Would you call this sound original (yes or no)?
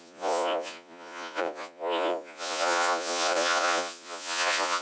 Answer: no